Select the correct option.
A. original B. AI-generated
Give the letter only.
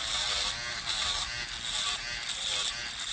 A